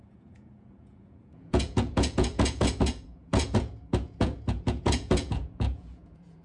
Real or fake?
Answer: fake